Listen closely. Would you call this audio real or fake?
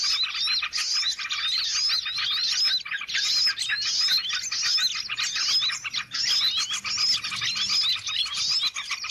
real